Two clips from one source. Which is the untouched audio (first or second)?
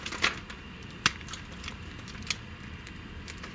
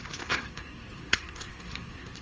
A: first